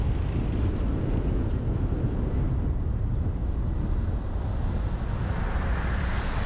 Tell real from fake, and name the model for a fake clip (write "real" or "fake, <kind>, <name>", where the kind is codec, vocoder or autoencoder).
real